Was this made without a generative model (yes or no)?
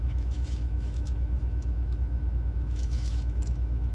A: no